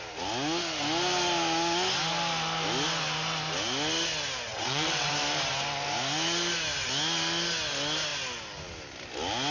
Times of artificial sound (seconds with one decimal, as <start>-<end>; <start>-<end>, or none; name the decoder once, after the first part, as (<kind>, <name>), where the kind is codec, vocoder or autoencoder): 4.5-5.1 (vocoder, WaveNeXt)